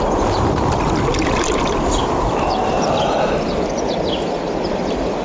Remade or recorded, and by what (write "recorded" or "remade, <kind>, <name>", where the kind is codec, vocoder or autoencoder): recorded